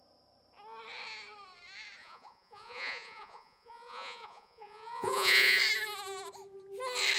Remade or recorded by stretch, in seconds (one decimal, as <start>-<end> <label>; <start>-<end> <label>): 0.0-2.0 recorded; 2.0-5.6 remade; 5.6-7.2 recorded